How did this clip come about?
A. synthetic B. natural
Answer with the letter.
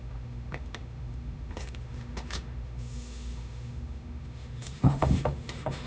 A